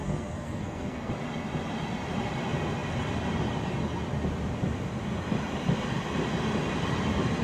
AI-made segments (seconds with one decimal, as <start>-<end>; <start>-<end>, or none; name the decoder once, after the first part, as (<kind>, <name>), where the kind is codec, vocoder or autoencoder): 0.0-1.1 (codec, SNAC)